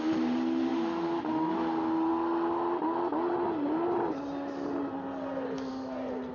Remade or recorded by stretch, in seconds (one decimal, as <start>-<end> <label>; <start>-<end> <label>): 0.0-6.3 recorded